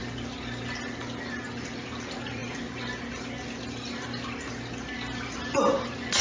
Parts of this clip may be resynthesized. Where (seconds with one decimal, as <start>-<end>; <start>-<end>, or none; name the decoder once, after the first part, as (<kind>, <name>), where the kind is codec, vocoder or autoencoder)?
none

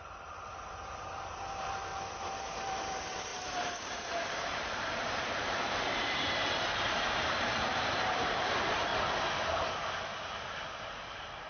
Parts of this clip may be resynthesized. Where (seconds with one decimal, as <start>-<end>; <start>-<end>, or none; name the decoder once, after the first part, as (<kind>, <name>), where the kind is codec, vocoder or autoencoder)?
0.0-1.9 (vocoder, BigVGAN v2); 2.4-8.9; 10.8-11.5

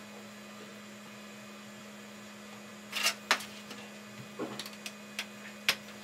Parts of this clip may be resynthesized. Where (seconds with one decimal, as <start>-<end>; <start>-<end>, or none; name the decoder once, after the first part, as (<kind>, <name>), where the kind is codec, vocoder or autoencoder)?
none

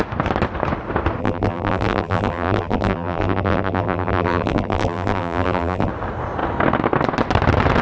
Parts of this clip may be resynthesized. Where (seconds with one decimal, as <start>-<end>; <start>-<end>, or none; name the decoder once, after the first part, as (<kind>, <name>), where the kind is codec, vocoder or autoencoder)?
1.2-5.9 (vocoder, BigVGAN v2)

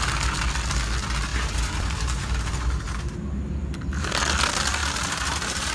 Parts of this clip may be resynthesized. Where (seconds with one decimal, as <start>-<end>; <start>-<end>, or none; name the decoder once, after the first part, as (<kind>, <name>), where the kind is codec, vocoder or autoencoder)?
1.3-4.2 (vocoder, BigVGAN v2); 4.8-5.7